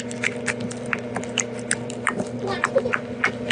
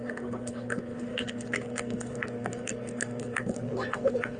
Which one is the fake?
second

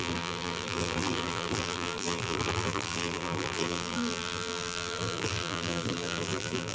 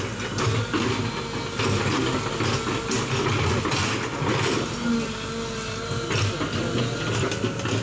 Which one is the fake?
first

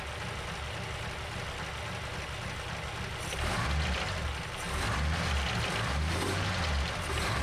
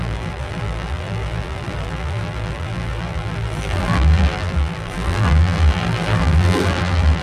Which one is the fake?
second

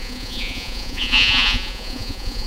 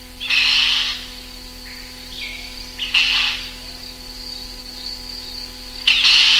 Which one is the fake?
first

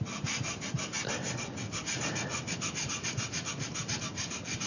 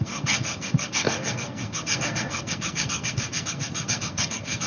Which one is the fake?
second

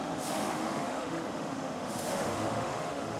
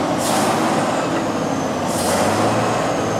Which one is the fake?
first